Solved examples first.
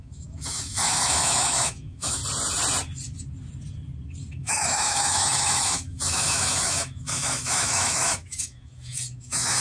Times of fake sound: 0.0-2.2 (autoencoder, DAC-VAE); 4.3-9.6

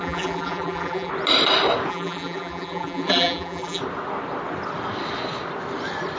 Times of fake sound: 0.0-1.1 (vocoder, BigVGAN v2); 1.9-3.8

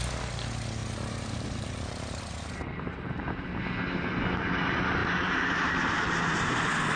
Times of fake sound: 0.8-2.2 (vocoder, BigVGAN v2); 5.0-5.7

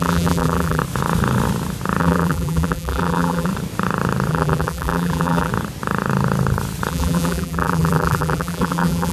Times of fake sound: 0.0-0.8 (vocoder, BigVGAN v2); 2.0-3.5; 4.3-5.5; 6.9-9.1

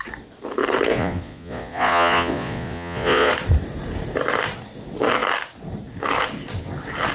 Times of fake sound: 0.9-3.3 (vocoder, Vocos)

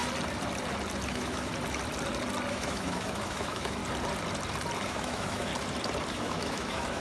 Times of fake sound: 1.1-1.5 (autoencoder, DAC-VAE); 2.5-3.8; 4.9-5.5; 6.1-7.0

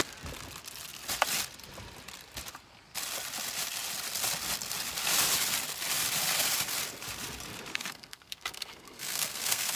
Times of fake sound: 7.7-9.8 (codec, SNAC)

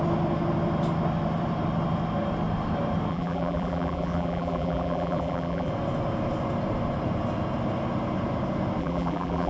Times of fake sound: 3.1-5.7 (vocoder, BigVGAN v2); 8.8-9.5